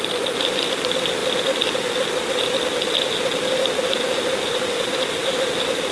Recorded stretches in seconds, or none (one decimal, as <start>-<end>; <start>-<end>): 0.0-5.9